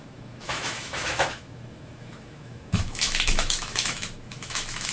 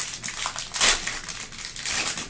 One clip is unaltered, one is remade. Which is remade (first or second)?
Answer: first